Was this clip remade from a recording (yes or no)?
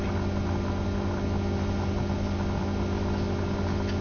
no